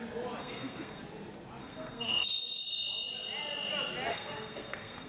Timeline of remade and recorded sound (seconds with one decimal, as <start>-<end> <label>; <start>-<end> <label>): 0.0-0.4 recorded; 0.4-1.0 remade; 1.0-1.6 recorded; 1.6-2.6 remade; 2.6-4.1 recorded; 4.1-5.1 remade